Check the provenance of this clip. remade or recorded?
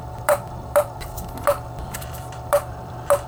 remade